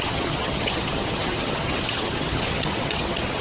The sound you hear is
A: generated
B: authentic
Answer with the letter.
A